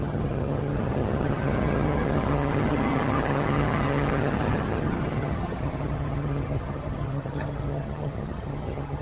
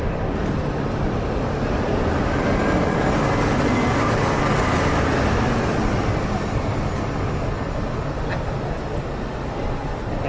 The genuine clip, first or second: second